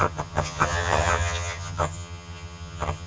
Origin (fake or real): fake